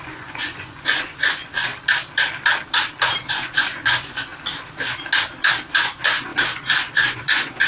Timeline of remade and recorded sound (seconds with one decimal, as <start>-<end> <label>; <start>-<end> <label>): 0.0-1.7 remade; 1.7-3.3 recorded; 3.3-4.3 remade; 4.3-5.8 recorded; 5.8-7.7 remade